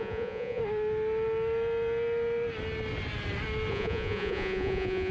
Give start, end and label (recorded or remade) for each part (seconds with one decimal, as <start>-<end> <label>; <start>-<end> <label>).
0.0-0.6 remade; 0.6-3.7 recorded; 3.7-5.1 remade